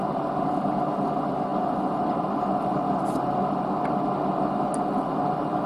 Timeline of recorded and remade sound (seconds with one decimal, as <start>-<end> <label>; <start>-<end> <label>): 0.0-5.7 recorded